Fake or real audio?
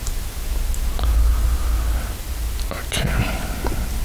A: real